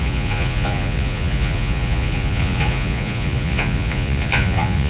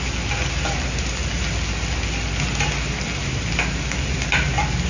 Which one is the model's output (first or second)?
first